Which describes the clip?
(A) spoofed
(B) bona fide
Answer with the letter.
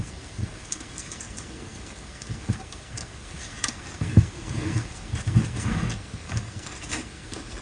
A